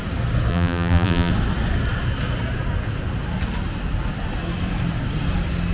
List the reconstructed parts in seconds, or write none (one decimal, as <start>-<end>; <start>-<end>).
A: 0.5-1.3